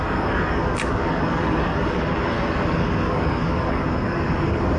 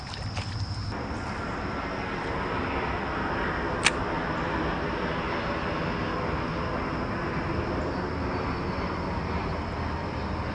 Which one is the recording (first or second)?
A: second